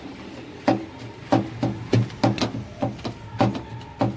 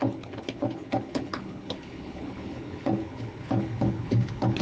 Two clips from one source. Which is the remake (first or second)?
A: second